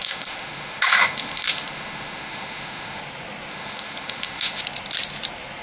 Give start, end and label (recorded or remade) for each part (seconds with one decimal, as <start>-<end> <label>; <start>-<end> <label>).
0.0-3.0 remade; 3.0-3.5 recorded; 3.5-4.6 remade; 4.6-5.6 recorded